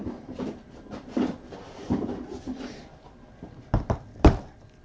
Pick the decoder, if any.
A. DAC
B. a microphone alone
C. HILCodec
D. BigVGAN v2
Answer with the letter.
D